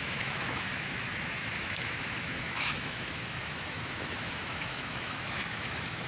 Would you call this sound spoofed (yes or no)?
yes